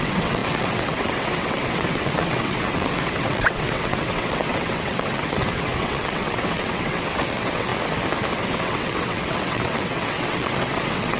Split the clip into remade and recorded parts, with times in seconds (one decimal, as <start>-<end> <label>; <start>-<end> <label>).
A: 0.0-7.7 remade; 7.7-8.3 recorded; 8.3-11.2 remade